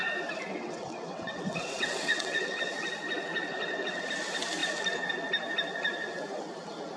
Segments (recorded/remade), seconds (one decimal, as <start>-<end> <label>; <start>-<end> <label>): 0.0-0.5 recorded; 0.5-2.7 remade; 2.7-3.5 recorded; 3.5-4.0 remade; 4.0-7.0 recorded